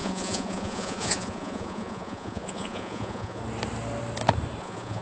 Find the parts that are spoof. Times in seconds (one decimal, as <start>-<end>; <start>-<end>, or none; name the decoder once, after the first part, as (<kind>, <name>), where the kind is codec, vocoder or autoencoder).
0.0-3.4 (vocoder, Vocos); 4.6-5.0